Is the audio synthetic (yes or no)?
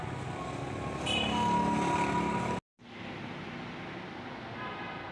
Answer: no